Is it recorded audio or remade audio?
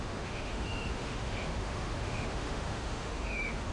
remade